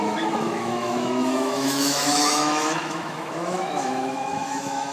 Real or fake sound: fake